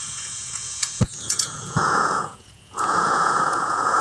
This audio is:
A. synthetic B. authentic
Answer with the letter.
A